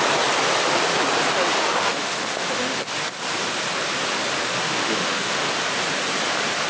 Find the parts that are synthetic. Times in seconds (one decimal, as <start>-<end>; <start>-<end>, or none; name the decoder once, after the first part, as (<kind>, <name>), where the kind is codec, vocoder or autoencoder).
1.6-2.8 (autoencoder, DAC-VAE); 4.4-5.5